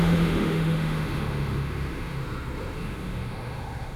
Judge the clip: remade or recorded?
remade